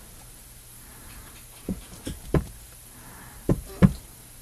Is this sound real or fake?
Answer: fake